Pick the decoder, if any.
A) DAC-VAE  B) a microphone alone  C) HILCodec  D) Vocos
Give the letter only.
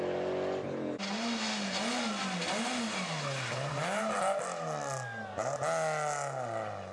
B